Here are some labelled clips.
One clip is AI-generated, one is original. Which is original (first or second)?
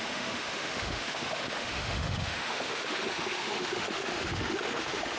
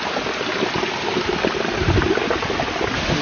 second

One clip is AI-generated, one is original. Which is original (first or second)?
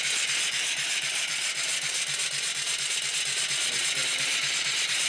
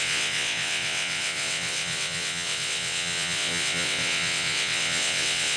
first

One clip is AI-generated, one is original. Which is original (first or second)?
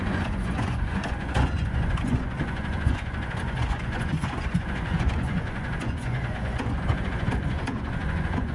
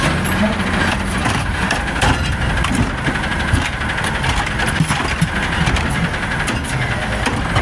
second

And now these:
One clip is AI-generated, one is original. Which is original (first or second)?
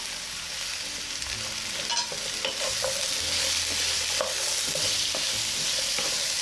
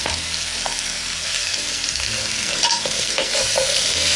first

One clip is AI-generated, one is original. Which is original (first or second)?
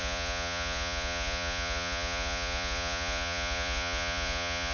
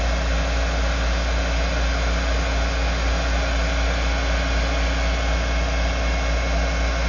second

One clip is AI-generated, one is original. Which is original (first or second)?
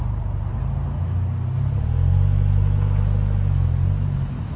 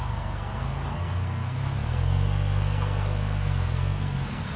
first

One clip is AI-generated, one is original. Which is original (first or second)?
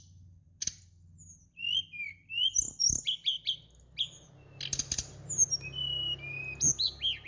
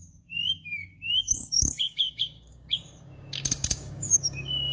first